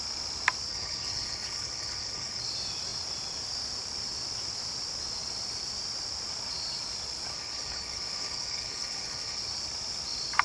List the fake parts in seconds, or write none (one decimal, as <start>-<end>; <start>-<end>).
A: 0.7-2.4; 7.3-9.4